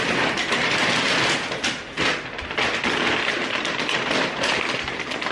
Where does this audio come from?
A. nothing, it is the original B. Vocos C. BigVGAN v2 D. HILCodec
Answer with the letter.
A